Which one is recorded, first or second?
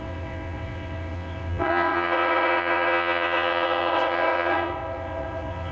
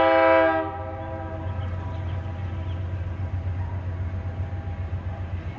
second